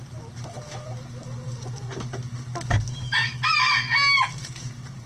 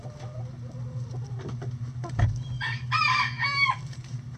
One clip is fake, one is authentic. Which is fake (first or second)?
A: second